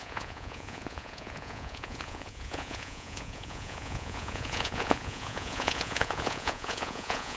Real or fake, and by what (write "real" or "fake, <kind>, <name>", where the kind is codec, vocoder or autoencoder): fake, vocoder, Vocos